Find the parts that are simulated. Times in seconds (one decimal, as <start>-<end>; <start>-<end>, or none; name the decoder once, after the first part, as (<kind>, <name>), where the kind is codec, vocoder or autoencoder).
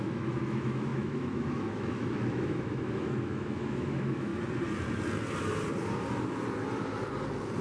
0.0-4.3 (autoencoder, DAC-VAE)